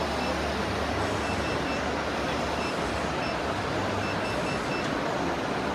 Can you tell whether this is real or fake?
real